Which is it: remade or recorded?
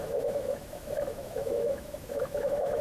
remade